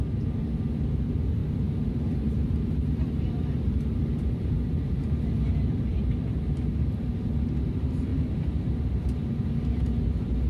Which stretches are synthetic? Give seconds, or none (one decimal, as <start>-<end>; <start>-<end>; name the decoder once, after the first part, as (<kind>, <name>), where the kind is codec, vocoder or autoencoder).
0.0-10.5 (vocoder, BigVGAN v2)